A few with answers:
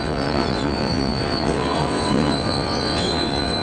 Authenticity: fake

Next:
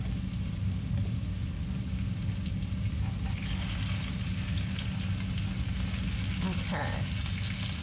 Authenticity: real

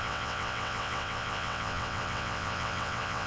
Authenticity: fake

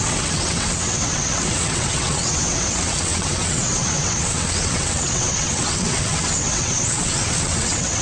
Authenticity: fake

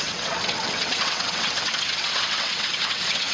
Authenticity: fake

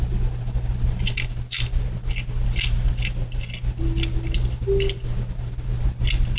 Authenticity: real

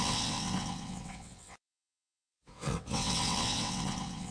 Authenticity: fake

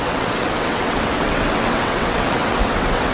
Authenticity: fake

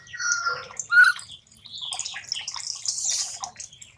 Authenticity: real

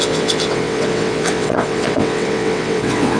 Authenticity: fake